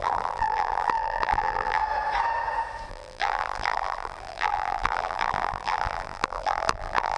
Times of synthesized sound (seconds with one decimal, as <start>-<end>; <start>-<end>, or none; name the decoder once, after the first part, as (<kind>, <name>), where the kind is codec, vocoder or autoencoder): 0.0-1.8 (vocoder, BigVGAN v2); 2.9-7.2

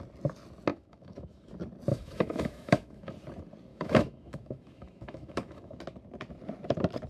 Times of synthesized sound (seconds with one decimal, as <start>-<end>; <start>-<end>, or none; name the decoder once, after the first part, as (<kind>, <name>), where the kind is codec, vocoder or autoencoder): 0.7-1.5 (autoencoder, DAC-VAE); 1.9-3.1; 3.7-5.8